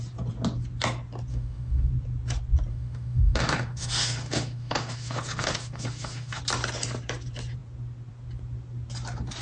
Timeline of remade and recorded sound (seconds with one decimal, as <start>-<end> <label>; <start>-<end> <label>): 0.0-1.3 recorded; 1.3-1.9 remade; 1.9-2.7 recorded; 2.7-6.4 remade; 6.4-9.4 recorded